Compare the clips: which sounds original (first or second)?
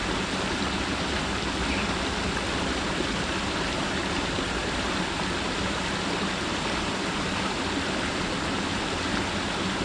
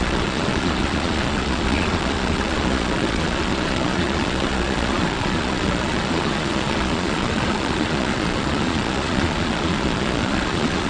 first